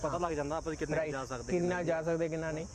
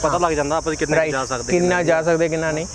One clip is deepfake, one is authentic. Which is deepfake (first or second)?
first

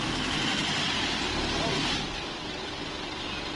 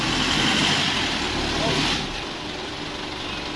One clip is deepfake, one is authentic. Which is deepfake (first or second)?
first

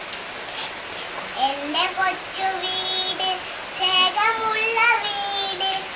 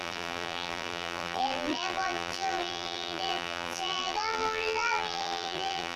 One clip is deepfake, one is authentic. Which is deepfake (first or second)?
second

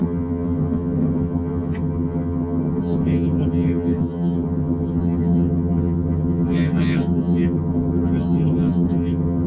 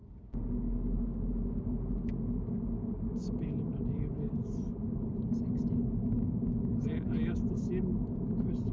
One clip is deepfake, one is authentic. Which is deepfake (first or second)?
first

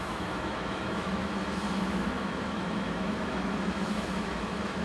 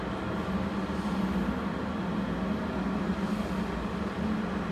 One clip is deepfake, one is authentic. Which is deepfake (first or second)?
first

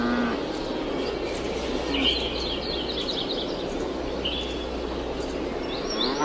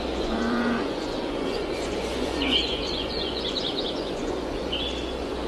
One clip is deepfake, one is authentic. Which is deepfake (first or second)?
second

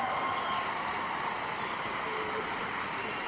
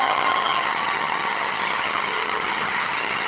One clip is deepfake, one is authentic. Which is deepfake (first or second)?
second